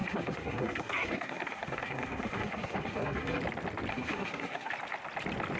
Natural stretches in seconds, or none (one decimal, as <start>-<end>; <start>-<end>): 3.4-3.9; 4.7-5.6